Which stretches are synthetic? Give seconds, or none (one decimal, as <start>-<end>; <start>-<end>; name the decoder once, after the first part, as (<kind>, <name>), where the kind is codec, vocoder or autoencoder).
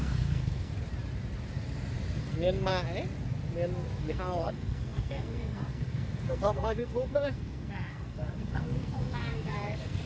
0.0-0.7 (codec, SNAC); 2.2-2.7; 4.0-10.1